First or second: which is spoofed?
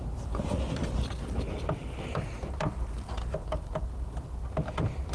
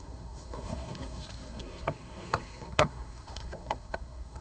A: second